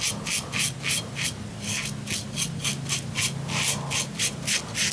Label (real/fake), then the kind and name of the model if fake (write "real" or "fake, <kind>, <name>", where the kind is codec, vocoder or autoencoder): real